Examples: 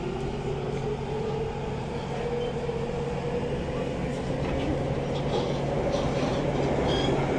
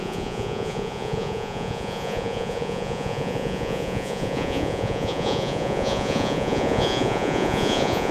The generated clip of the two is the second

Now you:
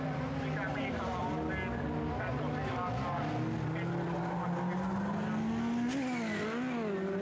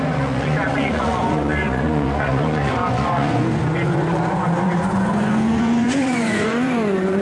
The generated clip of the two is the second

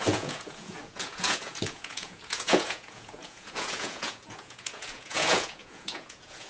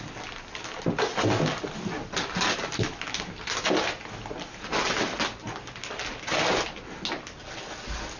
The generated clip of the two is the first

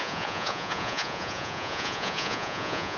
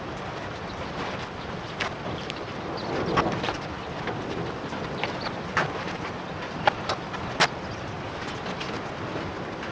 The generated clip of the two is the first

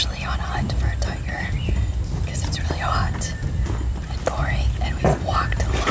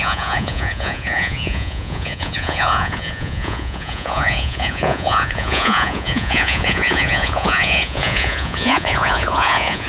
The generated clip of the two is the second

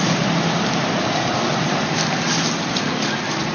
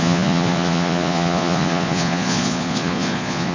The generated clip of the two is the second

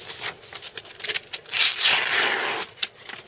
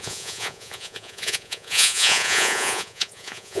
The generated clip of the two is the second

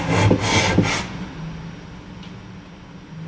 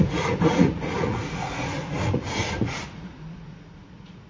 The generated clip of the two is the second